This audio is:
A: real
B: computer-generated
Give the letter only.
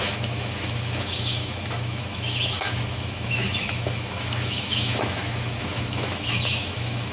B